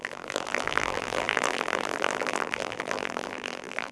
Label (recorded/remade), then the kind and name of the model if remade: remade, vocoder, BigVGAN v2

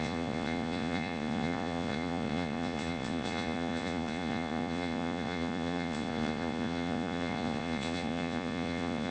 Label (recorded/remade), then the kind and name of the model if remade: remade, vocoder, Vocos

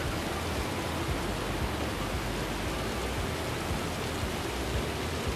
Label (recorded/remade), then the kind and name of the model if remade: recorded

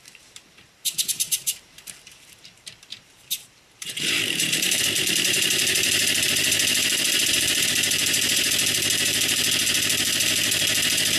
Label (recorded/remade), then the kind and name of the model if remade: remade, vocoder, BigVGAN v2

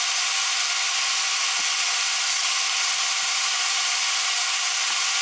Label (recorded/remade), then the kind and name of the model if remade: recorded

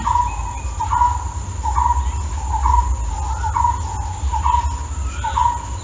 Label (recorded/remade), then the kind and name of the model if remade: recorded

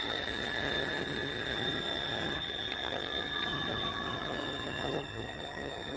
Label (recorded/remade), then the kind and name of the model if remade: remade, vocoder, HiFi-GAN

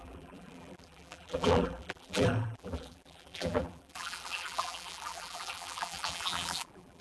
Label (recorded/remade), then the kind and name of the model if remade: remade, vocoder, BigVGAN v2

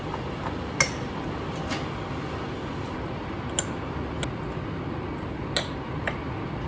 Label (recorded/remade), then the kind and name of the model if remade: recorded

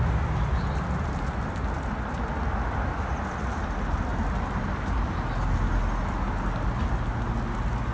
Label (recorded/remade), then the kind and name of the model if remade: recorded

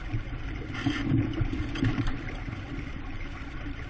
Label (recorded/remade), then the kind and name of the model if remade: remade, vocoder, BigVGAN v2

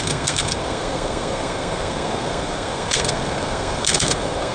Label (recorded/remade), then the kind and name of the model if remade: remade, codec, SNAC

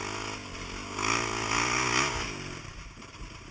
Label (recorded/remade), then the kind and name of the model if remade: recorded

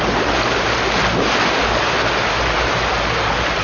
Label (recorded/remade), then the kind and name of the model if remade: recorded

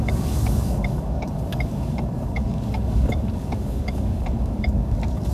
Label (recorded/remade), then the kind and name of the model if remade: remade, codec, DAC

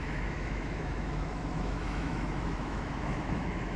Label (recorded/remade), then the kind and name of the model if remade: remade, autoencoder, DAC-VAE